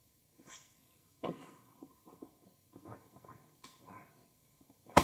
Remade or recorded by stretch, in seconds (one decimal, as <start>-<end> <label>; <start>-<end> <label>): 0.0-5.0 remade